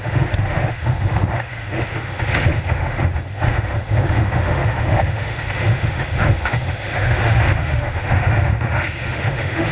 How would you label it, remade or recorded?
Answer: remade